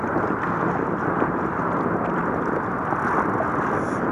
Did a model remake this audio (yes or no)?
no